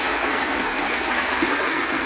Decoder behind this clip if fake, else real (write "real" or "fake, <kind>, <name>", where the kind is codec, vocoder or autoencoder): fake, codec, SNAC